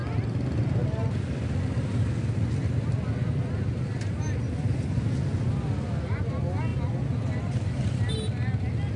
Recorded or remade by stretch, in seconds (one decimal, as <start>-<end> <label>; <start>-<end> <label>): 0.0-9.0 recorded